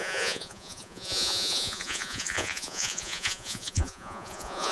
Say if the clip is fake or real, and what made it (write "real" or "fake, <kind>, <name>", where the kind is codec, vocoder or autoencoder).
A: fake, vocoder, Vocos